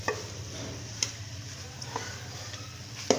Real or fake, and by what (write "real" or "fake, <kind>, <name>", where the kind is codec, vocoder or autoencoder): real